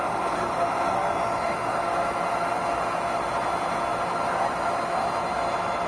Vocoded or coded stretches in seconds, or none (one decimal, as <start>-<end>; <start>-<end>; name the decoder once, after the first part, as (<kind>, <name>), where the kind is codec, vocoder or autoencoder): none